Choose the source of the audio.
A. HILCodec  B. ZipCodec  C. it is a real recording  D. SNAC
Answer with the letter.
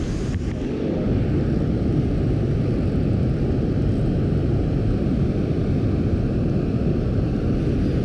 C